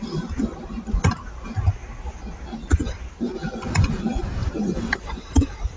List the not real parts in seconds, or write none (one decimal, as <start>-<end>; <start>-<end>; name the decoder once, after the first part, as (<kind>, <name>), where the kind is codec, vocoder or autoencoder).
4.4-5.8 (vocoder, BigVGAN v2)